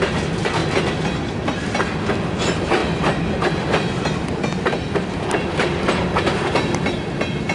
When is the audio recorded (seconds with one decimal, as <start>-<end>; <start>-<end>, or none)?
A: 0.0-7.5